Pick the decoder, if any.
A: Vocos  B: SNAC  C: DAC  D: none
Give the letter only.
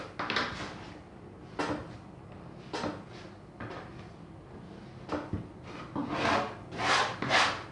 D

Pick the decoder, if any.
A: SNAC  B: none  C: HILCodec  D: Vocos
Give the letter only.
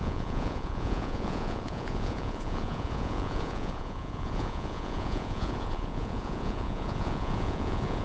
D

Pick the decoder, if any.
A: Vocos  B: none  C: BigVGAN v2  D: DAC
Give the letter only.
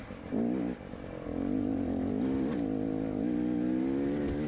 B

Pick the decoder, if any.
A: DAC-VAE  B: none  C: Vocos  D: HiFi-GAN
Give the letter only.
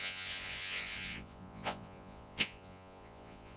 C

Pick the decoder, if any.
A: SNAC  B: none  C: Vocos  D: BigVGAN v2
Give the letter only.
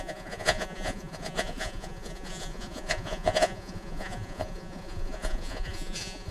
C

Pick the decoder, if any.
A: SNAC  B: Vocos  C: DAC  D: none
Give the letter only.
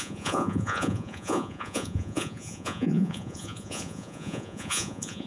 B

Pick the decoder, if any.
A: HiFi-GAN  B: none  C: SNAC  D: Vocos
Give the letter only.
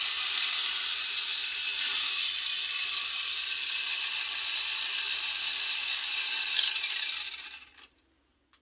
B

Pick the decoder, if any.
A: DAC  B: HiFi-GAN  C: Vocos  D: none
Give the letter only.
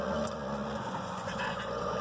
C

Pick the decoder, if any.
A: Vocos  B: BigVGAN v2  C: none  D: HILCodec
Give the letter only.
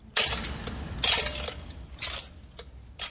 C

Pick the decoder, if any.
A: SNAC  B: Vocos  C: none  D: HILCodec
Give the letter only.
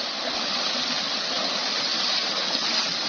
C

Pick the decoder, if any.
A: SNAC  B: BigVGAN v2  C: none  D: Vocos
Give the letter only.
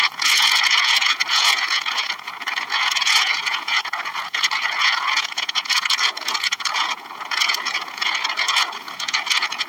D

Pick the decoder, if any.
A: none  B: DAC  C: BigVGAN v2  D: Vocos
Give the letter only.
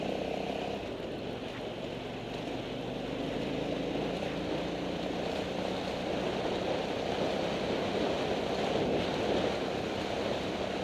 A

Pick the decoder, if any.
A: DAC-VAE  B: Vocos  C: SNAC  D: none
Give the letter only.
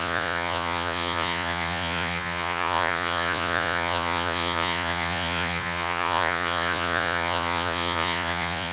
B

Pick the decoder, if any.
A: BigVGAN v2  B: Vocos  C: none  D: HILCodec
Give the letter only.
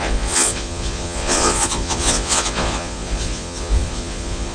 B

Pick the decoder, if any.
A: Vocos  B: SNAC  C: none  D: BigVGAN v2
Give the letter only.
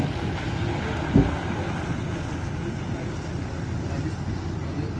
C